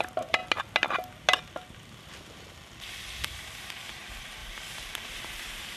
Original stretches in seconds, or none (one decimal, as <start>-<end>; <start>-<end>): 0.4-3.2